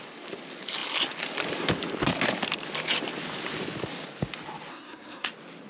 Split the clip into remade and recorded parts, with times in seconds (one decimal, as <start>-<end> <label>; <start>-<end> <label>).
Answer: 0.0-4.7 recorded; 4.7-5.3 remade; 5.3-5.7 recorded